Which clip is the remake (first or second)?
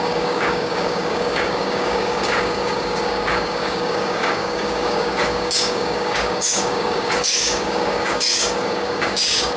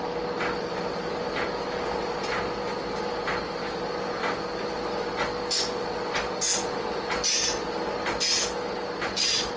first